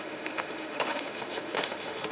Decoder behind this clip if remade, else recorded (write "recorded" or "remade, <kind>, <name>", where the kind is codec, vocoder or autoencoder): remade, autoencoder, DAC-VAE